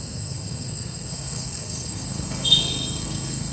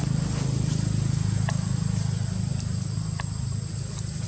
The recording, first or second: second